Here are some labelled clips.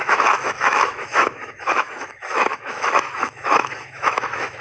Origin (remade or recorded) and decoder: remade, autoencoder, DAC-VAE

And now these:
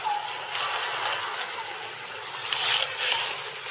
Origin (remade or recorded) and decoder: recorded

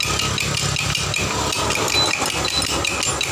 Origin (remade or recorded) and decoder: recorded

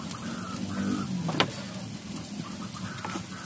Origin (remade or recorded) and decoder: recorded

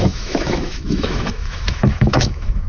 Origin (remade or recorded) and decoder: remade, autoencoder, DAC-VAE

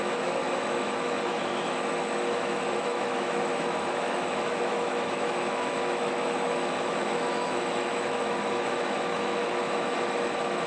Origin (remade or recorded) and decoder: remade, autoencoder, DAC-VAE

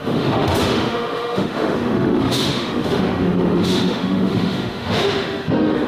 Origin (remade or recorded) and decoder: remade, autoencoder, DAC-VAE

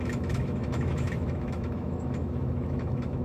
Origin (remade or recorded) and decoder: remade, autoencoder, DAC-VAE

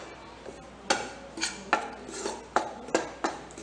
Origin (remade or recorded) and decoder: recorded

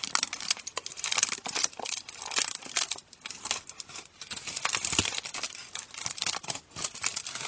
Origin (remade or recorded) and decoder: recorded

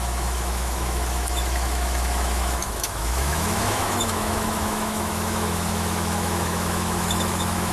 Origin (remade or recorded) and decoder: remade, autoencoder, DAC-VAE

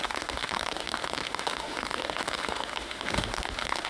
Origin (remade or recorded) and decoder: remade, autoencoder, DAC-VAE